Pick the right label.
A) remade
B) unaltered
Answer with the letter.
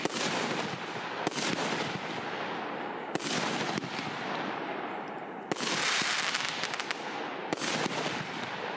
B